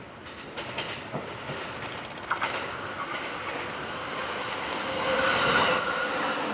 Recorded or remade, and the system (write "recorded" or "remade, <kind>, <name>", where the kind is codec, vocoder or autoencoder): recorded